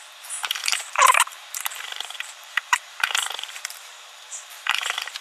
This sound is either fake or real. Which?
fake